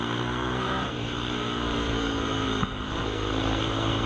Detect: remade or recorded remade